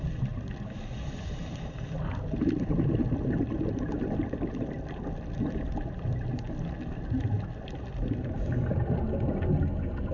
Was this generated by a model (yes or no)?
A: no